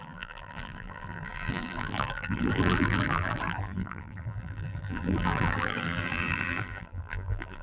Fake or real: fake